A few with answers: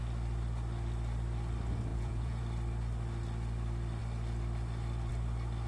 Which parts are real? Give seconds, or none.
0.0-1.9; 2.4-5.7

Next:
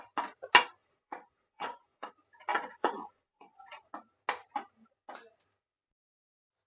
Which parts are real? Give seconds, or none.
0.0-0.8; 2.1-2.5; 3.9-6.7

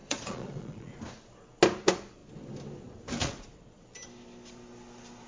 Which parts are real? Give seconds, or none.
1.0-3.2; 3.8-5.3

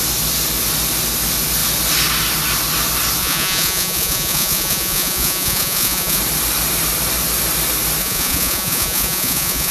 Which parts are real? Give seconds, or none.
0.0-3.2; 6.2-8.0

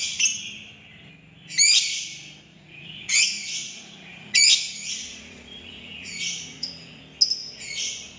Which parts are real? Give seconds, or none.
0.0-2.5; 7.0-7.4

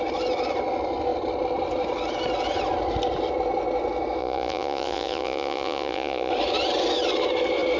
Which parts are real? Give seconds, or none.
0.0-4.2; 6.3-7.8

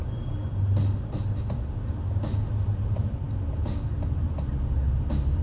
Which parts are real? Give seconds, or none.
0.0-5.4